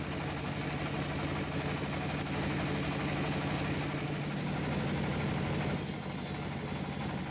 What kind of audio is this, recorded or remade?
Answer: recorded